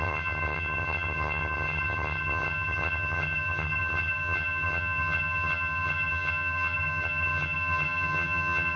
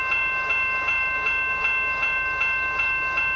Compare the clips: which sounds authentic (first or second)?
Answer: second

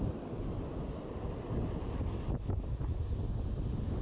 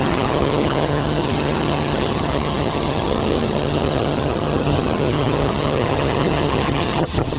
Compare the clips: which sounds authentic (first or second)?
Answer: first